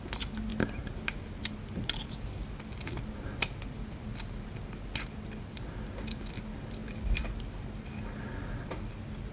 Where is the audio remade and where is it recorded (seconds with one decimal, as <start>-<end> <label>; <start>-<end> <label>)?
0.0-9.3 recorded